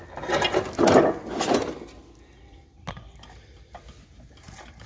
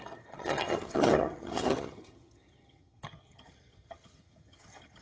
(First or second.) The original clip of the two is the first